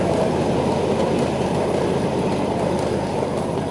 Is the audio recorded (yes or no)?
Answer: yes